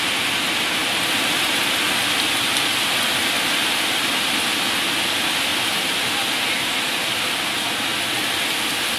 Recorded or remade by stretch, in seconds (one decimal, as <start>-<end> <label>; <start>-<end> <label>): 0.0-9.0 recorded